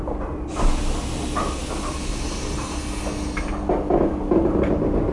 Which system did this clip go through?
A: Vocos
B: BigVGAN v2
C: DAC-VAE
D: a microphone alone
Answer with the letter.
D